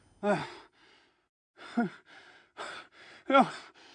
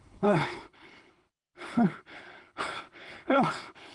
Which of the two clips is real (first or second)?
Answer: first